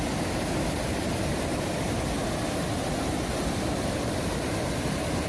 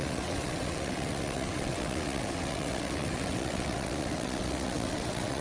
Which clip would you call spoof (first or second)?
second